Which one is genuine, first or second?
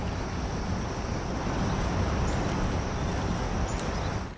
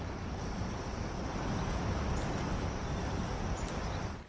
first